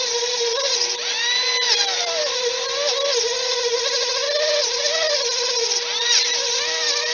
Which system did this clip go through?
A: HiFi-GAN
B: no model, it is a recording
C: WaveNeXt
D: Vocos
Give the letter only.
B